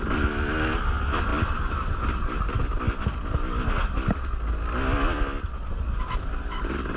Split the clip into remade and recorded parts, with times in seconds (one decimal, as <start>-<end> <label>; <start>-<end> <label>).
0.0-7.0 recorded